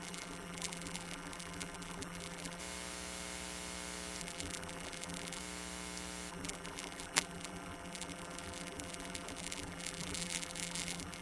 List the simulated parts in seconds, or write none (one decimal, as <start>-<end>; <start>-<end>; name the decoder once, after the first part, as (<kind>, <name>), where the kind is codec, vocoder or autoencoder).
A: 0.0-2.6 (vocoder, BigVGAN v2); 4.2-5.4; 6.3-11.2